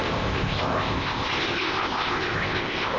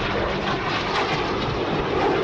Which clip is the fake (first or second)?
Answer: first